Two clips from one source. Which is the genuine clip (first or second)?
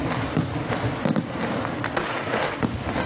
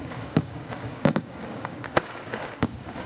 first